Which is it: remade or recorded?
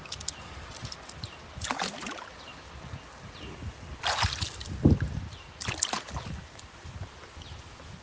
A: recorded